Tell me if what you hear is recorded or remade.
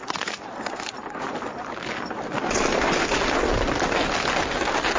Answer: recorded